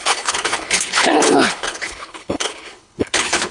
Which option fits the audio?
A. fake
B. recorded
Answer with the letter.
A